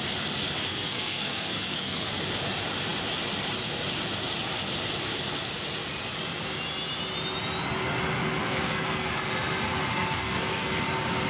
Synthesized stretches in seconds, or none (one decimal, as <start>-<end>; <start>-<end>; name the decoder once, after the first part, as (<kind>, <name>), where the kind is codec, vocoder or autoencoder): 0.7-2.1 (codec, SNAC); 8.4-9.1; 9.9-10.8